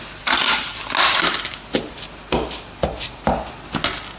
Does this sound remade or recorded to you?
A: recorded